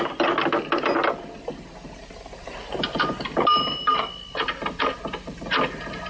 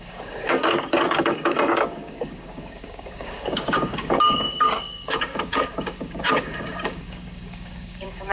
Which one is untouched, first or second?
first